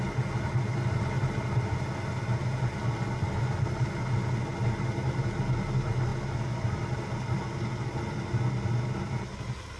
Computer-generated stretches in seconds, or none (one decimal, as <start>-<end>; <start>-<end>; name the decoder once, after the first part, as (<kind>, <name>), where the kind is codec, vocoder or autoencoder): none

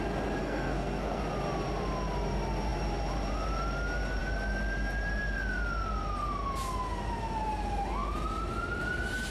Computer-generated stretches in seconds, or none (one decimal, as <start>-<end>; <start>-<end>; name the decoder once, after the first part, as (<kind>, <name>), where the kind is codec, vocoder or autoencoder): 0.4-1.2 (codec, SNAC)

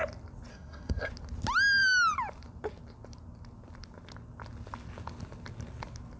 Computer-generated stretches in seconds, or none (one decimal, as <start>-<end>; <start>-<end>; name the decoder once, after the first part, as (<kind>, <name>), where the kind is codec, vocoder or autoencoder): 0.5-1.1 (codec, SNAC)

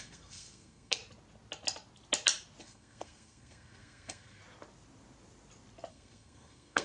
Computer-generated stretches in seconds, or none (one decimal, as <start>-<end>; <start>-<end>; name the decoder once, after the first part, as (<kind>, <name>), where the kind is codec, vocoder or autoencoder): 0.0-1.0 (codec, SNAC); 2.6-4.4; 5.9-6.8